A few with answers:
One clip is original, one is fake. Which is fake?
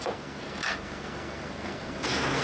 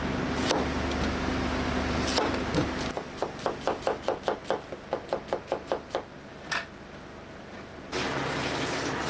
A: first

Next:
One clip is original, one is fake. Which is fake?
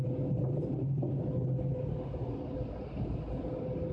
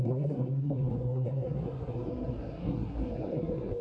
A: second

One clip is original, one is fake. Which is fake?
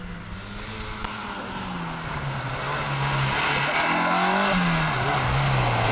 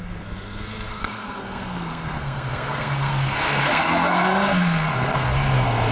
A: second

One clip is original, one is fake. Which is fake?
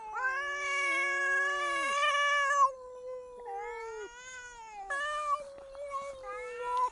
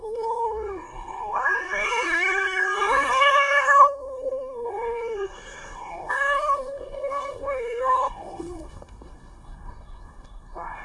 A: second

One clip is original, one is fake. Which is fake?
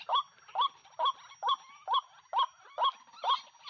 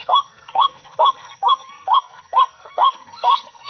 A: second